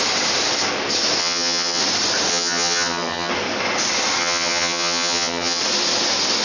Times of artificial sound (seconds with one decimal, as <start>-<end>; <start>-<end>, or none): 1.2-1.8; 2.3-3.3; 4.2-5.6